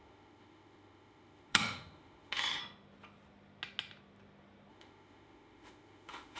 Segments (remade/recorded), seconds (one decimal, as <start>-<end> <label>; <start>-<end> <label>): 0.0-2.6 remade; 2.6-4.7 recorded; 4.7-6.4 remade